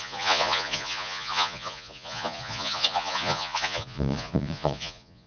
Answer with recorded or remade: remade